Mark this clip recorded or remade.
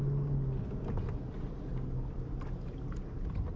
recorded